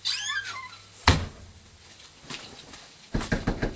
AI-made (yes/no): no